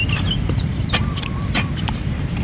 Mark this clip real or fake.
fake